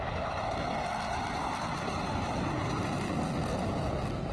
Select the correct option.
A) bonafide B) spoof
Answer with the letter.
A